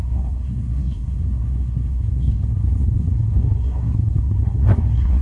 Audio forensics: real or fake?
fake